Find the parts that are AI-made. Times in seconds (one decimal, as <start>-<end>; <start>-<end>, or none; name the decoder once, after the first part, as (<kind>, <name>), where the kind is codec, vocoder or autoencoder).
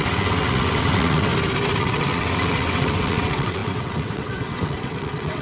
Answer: 0.0-1.3 (vocoder, WaveNeXt); 1.8-5.4